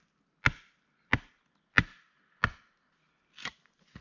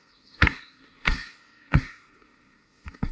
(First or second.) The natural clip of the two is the first